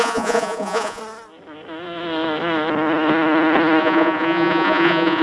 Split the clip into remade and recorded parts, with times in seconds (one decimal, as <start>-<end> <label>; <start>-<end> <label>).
0.0-1.0 remade; 1.0-3.8 recorded; 3.8-5.2 remade